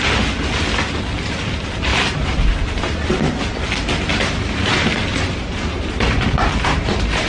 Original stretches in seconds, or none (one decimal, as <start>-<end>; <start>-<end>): 0.0-1.9; 3.1-4.1